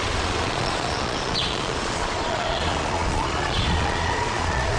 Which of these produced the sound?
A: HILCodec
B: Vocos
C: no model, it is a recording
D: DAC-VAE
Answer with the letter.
B